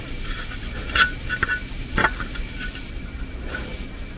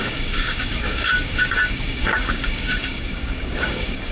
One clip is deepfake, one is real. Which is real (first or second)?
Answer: first